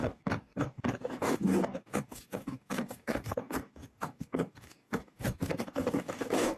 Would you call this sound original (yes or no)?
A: no